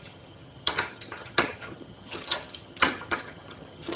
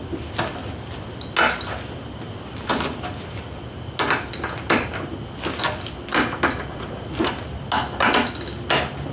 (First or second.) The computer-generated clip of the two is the first